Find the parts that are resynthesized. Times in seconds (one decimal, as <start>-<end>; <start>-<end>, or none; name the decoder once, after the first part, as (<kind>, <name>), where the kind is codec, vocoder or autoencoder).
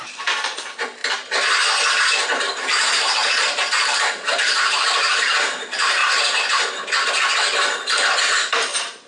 0.0-1.0 (vocoder, BigVGAN v2); 2.4-6.0; 8.2-9.1